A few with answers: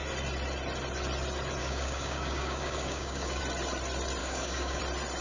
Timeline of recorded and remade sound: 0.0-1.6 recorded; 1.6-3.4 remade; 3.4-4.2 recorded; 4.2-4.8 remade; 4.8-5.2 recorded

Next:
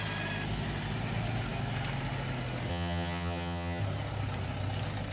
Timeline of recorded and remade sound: 0.0-2.7 recorded; 2.7-3.8 remade; 3.8-5.1 recorded

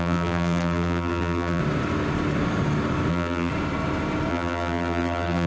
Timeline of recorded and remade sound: 0.0-1.6 remade; 1.6-3.1 recorded; 3.1-3.5 remade; 3.5-4.3 recorded; 4.3-5.5 remade

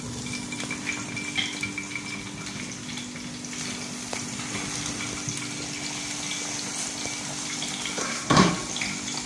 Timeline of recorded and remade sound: 0.0-8.0 recorded; 8.0-8.5 remade; 8.5-9.3 recorded